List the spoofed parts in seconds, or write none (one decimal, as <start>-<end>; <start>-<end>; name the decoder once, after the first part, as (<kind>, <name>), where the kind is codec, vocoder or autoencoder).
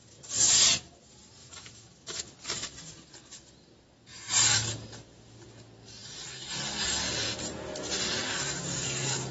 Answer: 1.4-2.2 (autoencoder, DAC-VAE)